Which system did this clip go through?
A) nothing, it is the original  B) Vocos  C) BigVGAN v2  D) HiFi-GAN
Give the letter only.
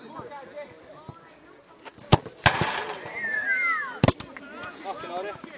A